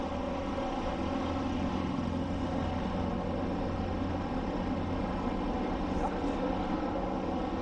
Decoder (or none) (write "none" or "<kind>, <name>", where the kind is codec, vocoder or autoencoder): none